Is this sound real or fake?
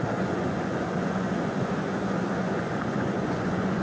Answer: fake